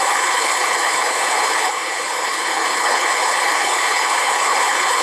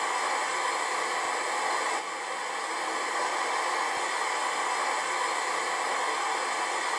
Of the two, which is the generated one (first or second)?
first